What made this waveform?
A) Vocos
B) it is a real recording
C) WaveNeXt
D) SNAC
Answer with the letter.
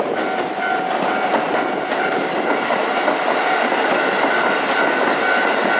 B